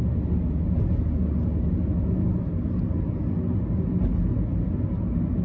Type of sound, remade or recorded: recorded